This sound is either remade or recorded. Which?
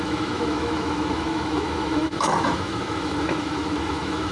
remade